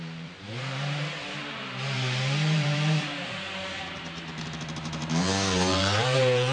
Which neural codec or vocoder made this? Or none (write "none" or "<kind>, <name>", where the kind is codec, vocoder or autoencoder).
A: vocoder, BigVGAN v2